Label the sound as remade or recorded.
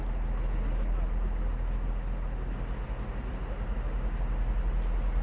recorded